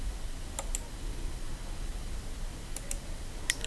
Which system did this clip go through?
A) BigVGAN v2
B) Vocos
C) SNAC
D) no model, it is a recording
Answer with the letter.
D